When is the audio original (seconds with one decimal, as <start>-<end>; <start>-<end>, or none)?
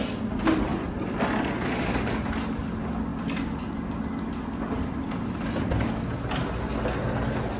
0.0-7.6